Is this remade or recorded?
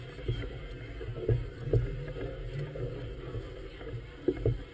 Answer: recorded